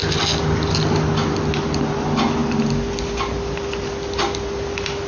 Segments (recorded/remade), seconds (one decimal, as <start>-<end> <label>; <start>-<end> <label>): 0.0-5.1 recorded